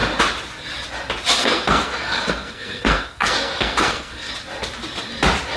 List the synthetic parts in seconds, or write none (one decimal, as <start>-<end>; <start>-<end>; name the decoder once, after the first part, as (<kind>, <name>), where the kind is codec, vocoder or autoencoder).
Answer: 1.4-4.3 (codec, SNAC)